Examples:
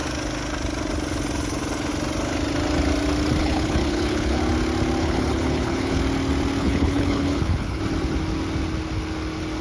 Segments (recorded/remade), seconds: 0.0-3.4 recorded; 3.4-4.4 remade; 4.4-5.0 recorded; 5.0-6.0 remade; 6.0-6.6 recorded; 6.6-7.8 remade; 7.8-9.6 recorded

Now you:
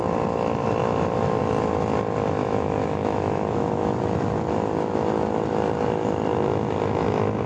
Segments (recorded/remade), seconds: 0.0-2.4 recorded; 2.4-4.0 remade; 4.0-7.5 recorded

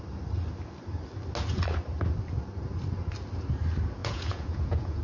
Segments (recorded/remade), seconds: 0.0-4.0 recorded; 4.0-5.0 remade

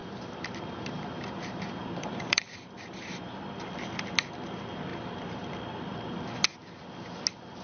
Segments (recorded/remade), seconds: 0.0-2.7 remade; 2.7-4.9 recorded; 4.9-5.6 remade; 5.6-7.6 recorded

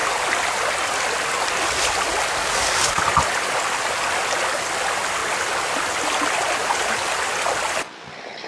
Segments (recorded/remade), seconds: 0.0-2.4 recorded; 2.4-3.0 remade; 3.0-8.5 recorded

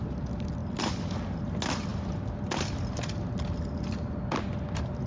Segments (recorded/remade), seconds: 0.0-5.1 recorded